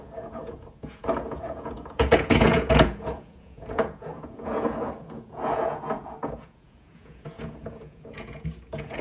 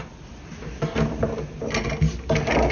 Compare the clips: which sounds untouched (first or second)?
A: second